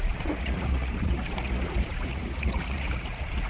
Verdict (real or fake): fake